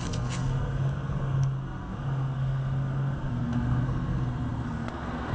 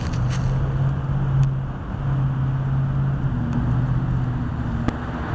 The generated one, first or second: first